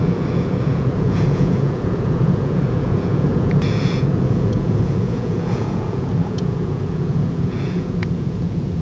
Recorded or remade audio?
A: remade